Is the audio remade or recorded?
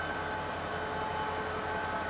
recorded